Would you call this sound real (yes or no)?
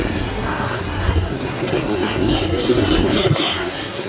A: no